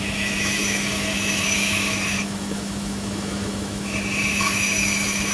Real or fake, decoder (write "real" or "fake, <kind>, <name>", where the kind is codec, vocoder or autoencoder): fake, autoencoder, DAC-VAE